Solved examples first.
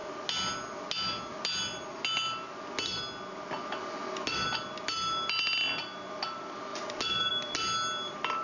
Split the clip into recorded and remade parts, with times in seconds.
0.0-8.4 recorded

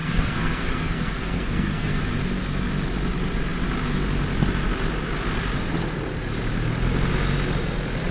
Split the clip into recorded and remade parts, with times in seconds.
0.0-2.0 remade; 2.0-8.1 recorded